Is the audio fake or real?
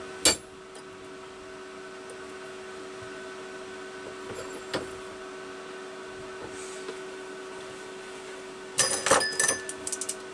real